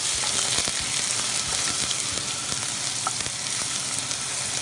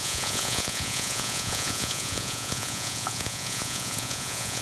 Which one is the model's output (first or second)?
second